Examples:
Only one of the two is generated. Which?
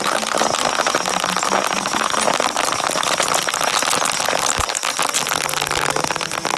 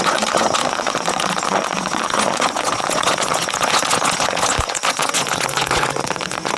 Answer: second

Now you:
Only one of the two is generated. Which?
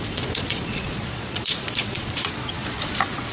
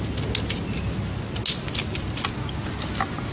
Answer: first